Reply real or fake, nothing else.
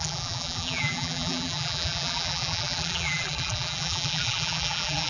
fake